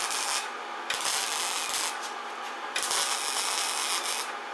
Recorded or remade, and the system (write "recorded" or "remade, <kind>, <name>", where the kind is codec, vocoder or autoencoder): recorded